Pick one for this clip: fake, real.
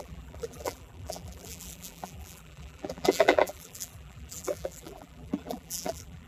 fake